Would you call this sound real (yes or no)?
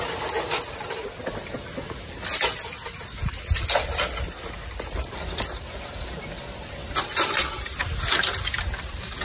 yes